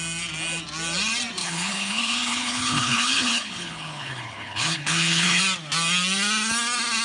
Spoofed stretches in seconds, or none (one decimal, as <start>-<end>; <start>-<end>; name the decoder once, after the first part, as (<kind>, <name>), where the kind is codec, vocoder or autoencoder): 1.4-5.4 (codec, HILCodec)